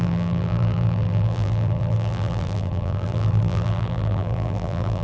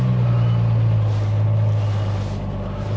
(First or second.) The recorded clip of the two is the second